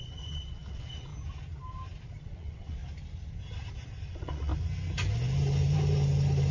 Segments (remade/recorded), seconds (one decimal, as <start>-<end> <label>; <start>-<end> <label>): 0.0-1.1 remade; 1.1-2.2 recorded; 2.2-2.8 remade; 2.8-4.1 recorded; 4.1-4.5 remade; 4.5-6.5 recorded